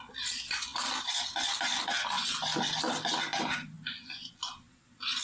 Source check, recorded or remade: recorded